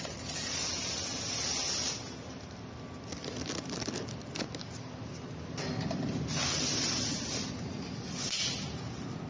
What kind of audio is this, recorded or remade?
recorded